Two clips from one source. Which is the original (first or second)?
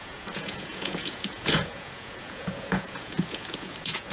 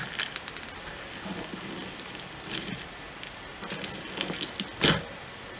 second